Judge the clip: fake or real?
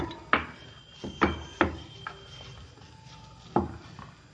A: real